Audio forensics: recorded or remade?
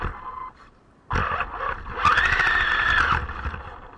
recorded